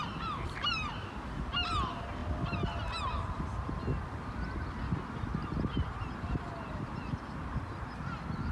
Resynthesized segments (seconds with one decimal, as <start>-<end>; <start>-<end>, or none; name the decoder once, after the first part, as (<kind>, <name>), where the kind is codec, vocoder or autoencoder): none